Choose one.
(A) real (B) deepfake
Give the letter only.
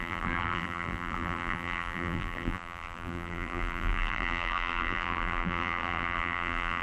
B